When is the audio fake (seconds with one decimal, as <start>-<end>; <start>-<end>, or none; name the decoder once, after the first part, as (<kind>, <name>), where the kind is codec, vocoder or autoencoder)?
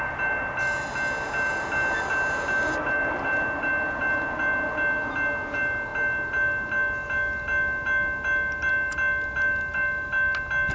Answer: none